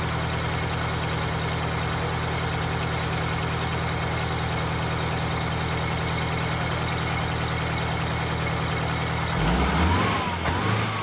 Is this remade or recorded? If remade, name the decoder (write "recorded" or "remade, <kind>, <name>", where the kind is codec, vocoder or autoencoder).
recorded